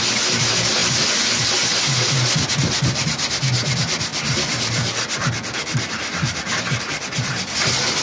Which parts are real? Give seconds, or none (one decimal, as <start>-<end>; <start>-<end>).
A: 0.0-8.0